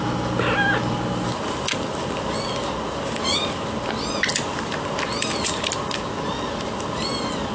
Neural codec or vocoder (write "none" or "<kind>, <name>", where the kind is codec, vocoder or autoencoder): none